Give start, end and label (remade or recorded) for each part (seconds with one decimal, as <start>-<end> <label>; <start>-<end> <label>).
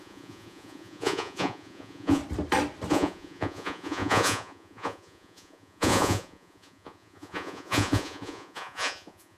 0.0-2.2 remade; 2.2-2.9 recorded; 2.9-9.4 remade